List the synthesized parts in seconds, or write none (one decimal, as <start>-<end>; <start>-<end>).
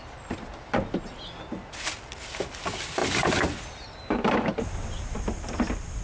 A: 3.0-5.5